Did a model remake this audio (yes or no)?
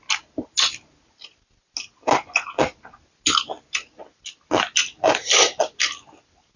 no